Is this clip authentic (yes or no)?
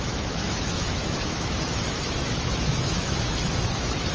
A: no